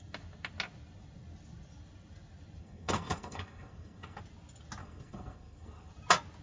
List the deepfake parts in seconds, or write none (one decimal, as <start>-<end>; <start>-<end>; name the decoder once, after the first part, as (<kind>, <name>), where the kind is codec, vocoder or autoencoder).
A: 2.6-4.2 (codec, SNAC); 4.8-5.9